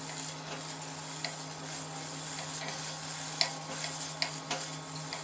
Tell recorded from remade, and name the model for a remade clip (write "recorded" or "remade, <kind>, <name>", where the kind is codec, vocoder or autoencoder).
recorded